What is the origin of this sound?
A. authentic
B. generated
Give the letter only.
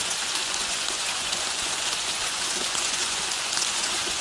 B